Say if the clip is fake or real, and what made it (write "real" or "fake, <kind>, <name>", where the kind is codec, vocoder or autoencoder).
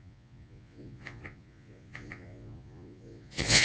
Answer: fake, vocoder, Vocos